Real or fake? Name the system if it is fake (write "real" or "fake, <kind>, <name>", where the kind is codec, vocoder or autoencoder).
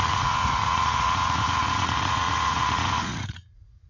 fake, vocoder, Vocos